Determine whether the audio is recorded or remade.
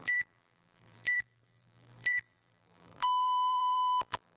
remade